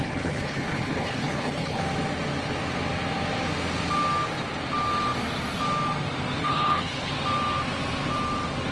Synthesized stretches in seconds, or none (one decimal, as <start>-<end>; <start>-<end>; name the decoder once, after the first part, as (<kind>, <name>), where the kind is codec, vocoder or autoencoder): 0.0-1.8 (codec, HILCodec); 6.4-7.1

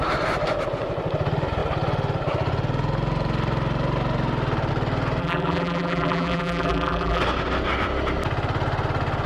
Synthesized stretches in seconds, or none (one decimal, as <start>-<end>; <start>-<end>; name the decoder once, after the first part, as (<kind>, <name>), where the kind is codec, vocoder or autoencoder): 5.2-7.2 (vocoder, BigVGAN v2)

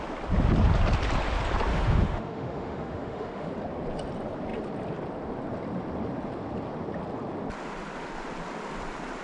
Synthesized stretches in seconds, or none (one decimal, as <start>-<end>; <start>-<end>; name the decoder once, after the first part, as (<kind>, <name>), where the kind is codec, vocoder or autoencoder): 1.7-3.5 (autoencoder, DAC-VAE)

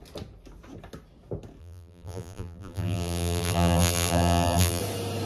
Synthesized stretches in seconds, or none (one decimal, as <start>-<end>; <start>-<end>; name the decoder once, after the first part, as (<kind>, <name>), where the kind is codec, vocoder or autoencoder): 1.6-4.8 (vocoder, BigVGAN v2)

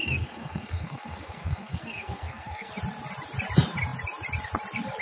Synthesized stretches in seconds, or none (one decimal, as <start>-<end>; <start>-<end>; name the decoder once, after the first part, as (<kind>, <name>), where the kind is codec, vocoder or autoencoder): 0.0-2.7 (codec, SNAC)

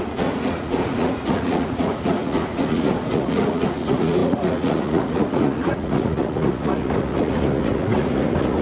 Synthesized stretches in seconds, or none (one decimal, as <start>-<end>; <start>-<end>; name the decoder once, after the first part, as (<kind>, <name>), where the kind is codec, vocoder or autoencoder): 0.0-8.6 (vocoder, Vocos)

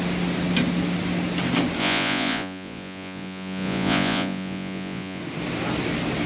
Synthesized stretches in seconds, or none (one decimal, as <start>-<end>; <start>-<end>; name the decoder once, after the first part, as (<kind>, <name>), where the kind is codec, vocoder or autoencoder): 1.8-5.2 (vocoder, Vocos)